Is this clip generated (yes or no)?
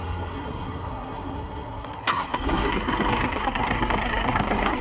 yes